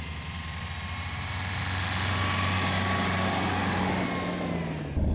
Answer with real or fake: real